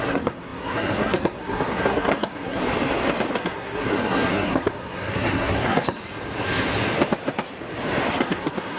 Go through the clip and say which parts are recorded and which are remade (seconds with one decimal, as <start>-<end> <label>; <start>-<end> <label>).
0.0-2.6 remade; 2.6-3.3 recorded; 3.3-6.0 remade; 6.0-8.1 recorded; 8.1-8.8 remade